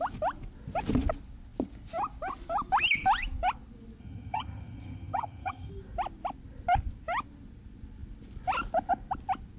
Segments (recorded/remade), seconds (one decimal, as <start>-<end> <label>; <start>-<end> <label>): 0.0-4.0 recorded; 4.0-5.7 remade; 5.7-9.6 recorded